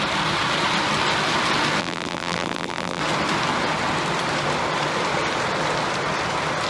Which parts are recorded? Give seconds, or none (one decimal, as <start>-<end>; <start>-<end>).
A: 0.0-1.8; 3.0-6.7